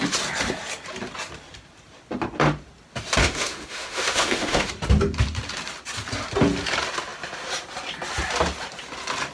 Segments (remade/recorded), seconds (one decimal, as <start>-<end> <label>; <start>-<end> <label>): 0.0-3.2 recorded; 3.2-4.7 remade; 4.7-9.3 recorded